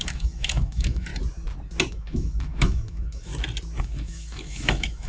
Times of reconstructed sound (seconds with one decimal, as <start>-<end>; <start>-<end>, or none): 0.0-1.1; 1.9-3.3; 3.8-5.1